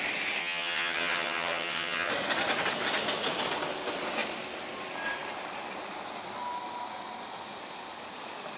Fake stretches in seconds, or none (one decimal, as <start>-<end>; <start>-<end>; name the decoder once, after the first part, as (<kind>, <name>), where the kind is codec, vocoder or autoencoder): 0.4-2.1 (vocoder, HiFi-GAN)